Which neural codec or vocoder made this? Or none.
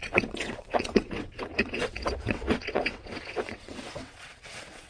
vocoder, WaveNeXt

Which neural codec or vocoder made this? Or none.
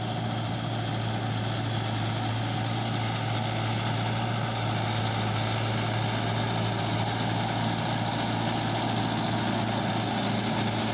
none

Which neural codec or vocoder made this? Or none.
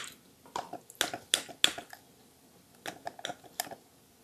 none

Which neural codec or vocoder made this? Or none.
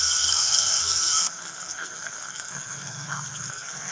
codec, SNAC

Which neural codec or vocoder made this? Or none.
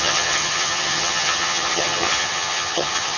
vocoder, HiFi-GAN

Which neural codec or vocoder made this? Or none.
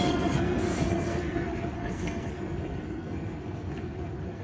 codec, SNAC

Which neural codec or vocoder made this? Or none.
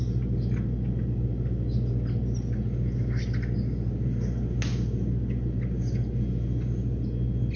none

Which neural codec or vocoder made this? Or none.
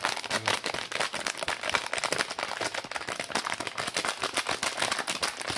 none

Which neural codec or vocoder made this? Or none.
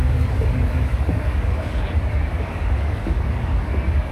codec, DAC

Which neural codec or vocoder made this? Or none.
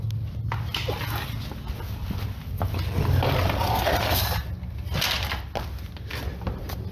none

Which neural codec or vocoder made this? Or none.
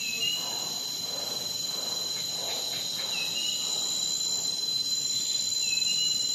none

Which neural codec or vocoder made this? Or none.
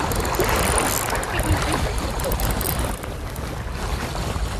none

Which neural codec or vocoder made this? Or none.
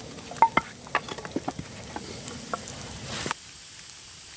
none